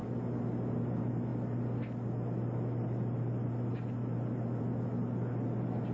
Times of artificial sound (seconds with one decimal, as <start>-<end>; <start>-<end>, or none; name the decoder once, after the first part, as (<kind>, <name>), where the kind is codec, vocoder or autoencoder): none